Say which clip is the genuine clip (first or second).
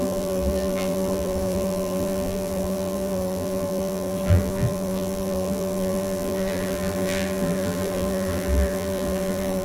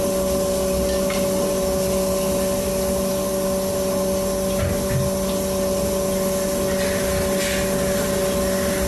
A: second